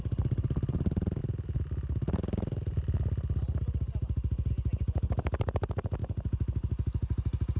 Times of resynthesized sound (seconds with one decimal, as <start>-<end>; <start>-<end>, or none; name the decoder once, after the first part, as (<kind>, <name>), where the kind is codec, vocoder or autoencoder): none